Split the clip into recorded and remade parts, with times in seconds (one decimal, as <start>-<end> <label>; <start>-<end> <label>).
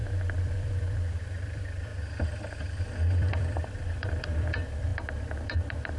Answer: 0.0-1.9 remade; 1.9-3.2 recorded; 3.2-6.0 remade